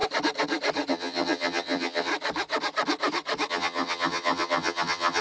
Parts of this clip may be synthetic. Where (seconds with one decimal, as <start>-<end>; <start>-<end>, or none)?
0.9-2.1; 3.5-5.2